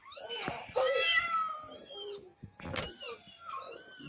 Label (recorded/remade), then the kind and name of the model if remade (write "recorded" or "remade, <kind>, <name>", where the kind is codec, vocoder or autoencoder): recorded